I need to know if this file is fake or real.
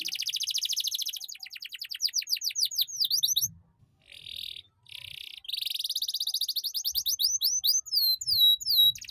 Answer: real